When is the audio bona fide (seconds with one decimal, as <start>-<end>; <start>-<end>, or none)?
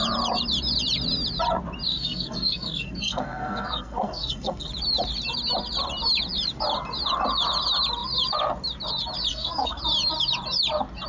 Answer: 0.0-1.9; 4.7-9.3; 9.8-11.1